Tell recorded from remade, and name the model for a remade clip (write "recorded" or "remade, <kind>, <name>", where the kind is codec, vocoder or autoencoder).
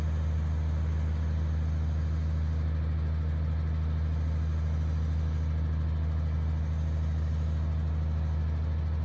recorded